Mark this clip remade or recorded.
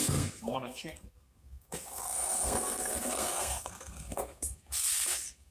remade